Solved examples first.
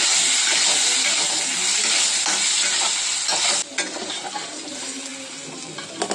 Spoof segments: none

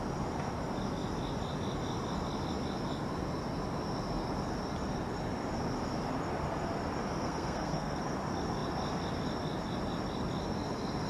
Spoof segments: 7.2-8.0

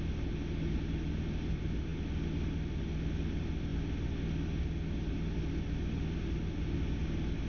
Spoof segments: none

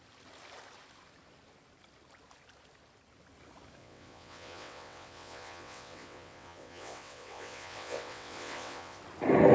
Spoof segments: 3.8-9.0